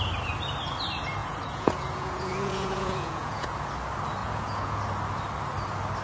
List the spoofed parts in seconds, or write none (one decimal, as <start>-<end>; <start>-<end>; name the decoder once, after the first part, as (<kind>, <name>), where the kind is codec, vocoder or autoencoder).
1.2-3.7 (vocoder, Vocos); 4.2-4.8